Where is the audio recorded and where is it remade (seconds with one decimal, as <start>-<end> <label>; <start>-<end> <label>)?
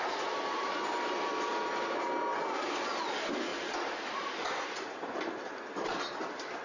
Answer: 0.0-6.6 recorded